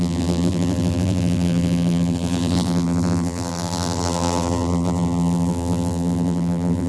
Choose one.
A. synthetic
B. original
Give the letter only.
A